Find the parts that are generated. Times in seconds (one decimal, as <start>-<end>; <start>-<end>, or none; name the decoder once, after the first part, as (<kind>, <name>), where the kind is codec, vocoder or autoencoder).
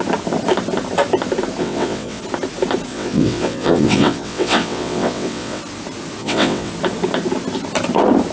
1.6-2.2 (vocoder, WaveNeXt); 2.9-5.6; 6.2-6.7